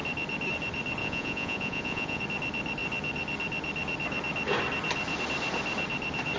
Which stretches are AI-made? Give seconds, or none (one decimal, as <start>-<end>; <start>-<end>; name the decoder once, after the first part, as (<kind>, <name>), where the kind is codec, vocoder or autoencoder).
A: 1.0-2.2 (vocoder, Vocos)